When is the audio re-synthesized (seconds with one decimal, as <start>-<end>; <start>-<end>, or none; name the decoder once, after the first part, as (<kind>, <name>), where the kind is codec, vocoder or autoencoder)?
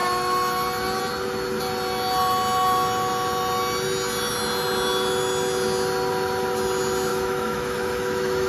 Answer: 7.1-8.5 (autoencoder, DAC-VAE)